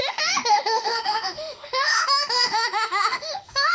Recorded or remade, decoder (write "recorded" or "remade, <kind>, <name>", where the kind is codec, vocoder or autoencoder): remade, autoencoder, DAC-VAE